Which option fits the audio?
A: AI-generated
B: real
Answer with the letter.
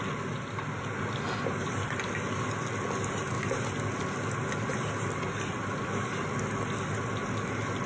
B